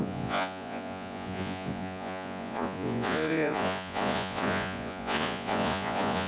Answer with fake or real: fake